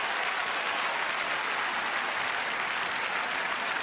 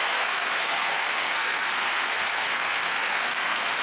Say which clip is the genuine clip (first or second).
first